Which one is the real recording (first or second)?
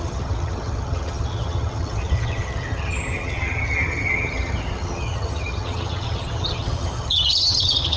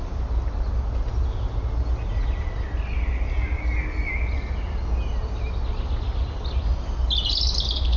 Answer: second